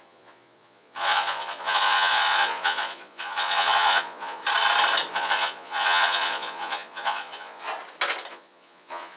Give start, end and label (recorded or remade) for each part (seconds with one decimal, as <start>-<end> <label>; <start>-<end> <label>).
0.0-4.4 remade; 4.4-5.1 recorded; 5.1-7.7 remade; 7.7-8.3 recorded; 8.3-9.2 remade